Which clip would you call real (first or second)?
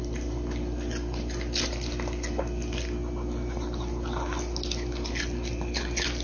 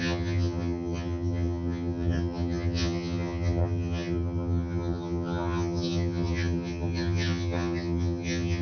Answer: first